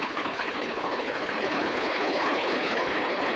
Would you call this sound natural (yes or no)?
no